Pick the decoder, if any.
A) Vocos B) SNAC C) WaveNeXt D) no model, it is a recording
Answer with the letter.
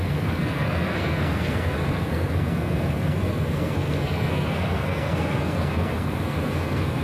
B